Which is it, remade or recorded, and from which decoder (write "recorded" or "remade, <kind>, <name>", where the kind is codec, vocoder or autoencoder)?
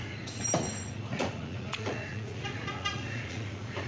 remade, vocoder, Vocos